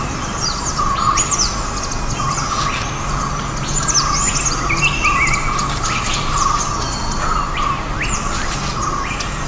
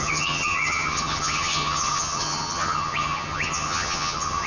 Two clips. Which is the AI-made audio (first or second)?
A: second